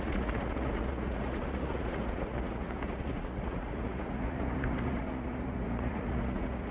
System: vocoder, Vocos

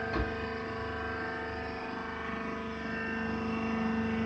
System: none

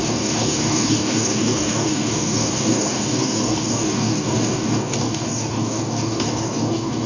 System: codec, DAC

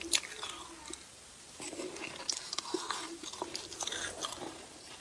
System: none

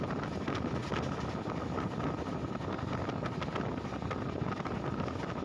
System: none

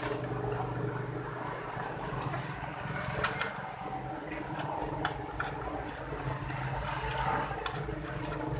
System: none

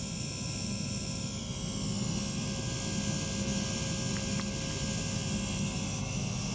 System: none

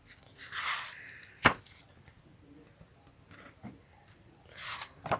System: none